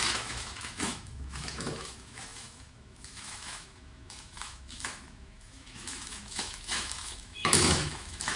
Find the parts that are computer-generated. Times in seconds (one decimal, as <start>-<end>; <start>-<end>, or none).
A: 0.0-8.4